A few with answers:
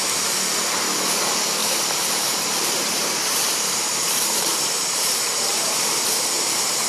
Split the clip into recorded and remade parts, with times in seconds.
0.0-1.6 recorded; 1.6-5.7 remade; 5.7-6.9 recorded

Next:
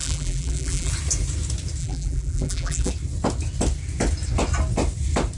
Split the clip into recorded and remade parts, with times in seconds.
0.0-0.9 remade; 0.9-1.8 recorded; 1.8-2.9 remade; 2.9-5.4 recorded

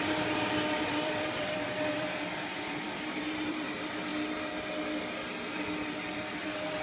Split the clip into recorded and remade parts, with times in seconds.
0.0-4.1 remade; 4.1-6.3 recorded; 6.3-6.8 remade